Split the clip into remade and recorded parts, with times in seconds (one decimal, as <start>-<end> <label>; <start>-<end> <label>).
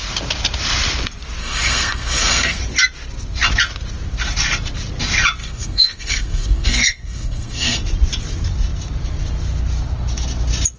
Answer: 0.0-1.4 recorded; 1.4-2.6 remade; 2.6-5.4 recorded; 5.4-7.8 remade; 7.8-10.8 recorded